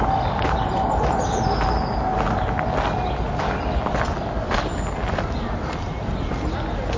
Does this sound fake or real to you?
real